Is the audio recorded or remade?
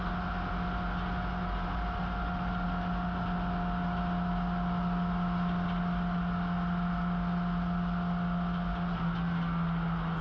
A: recorded